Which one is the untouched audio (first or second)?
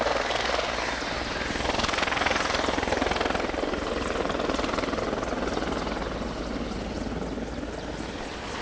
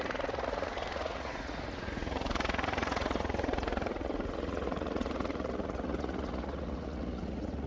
first